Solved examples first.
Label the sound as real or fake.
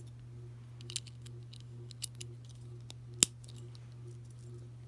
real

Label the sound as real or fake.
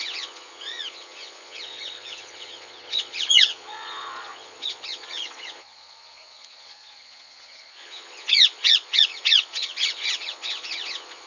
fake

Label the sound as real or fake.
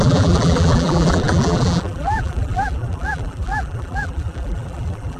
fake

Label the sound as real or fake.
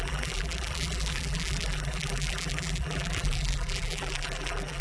fake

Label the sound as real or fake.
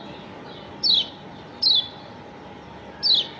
real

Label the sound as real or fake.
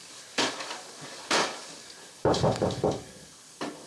fake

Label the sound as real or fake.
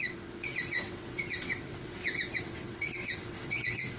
fake